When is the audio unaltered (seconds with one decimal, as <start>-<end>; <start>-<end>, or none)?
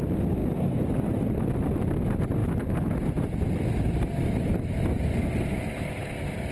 0.0-6.5